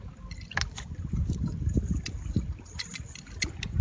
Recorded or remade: recorded